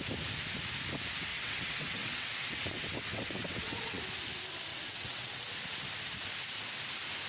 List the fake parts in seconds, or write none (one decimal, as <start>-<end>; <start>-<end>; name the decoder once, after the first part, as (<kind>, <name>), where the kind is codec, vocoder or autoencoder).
1.3-4.0 (vocoder, WaveNeXt); 4.7-5.5